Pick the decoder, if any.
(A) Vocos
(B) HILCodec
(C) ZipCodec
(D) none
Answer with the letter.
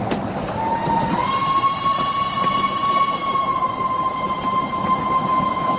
D